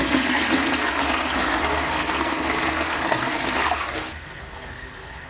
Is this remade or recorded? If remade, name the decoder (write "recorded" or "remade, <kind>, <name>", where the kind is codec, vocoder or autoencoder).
remade, codec, SNAC